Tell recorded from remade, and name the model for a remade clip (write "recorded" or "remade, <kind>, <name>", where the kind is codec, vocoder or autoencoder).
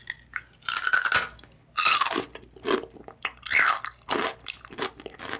recorded